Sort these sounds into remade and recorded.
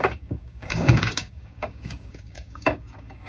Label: remade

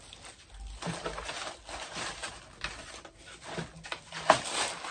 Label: recorded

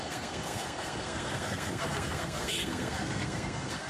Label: remade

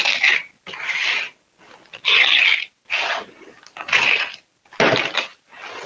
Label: recorded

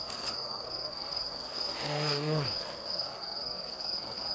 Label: remade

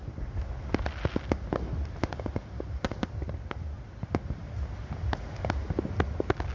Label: recorded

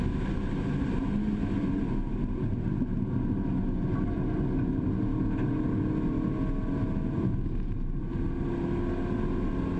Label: recorded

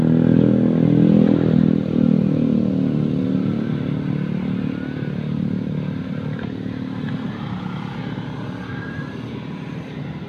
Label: recorded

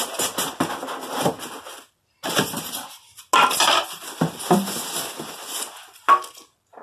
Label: recorded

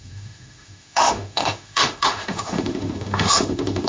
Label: remade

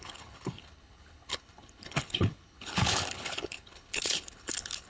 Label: remade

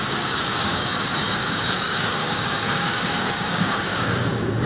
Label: remade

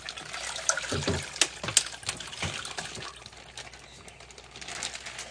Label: recorded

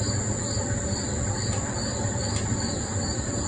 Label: recorded